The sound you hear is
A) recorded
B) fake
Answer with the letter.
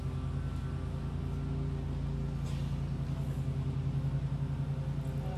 A